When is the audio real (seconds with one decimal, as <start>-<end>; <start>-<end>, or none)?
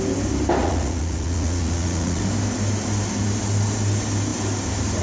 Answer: 0.0-0.6; 2.2-5.0